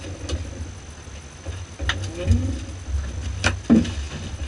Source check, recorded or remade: recorded